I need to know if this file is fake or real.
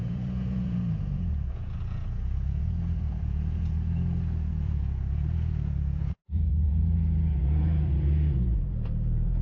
fake